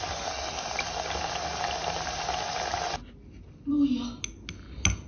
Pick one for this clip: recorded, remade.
recorded